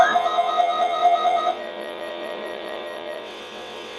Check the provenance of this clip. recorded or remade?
remade